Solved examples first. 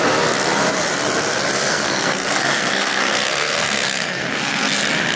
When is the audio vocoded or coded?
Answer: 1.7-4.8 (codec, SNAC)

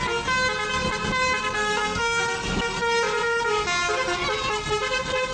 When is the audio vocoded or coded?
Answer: 1.4-2.2 (codec, SNAC)